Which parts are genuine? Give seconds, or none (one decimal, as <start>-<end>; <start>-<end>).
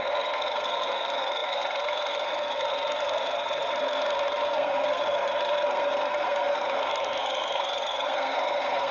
none